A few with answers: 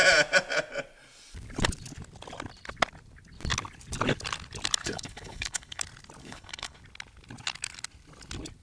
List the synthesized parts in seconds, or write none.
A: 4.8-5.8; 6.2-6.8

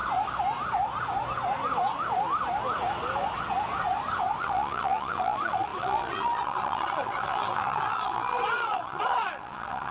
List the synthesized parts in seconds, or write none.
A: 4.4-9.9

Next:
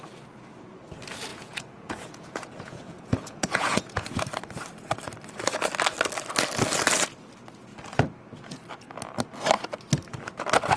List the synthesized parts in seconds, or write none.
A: 1.3-4.2